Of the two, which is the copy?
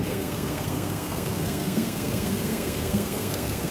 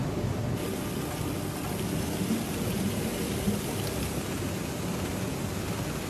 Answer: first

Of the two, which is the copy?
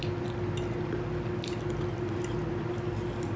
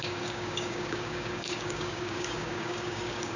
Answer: second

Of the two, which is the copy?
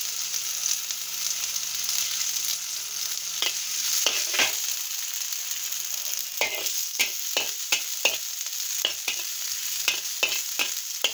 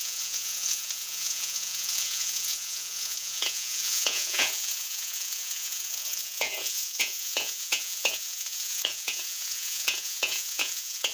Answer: second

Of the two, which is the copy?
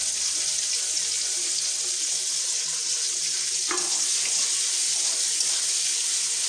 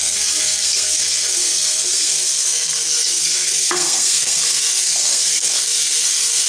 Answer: second